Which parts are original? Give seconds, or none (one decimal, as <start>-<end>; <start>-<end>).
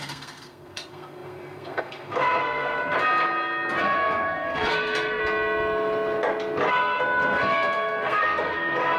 2.9-3.8; 5.2-6.7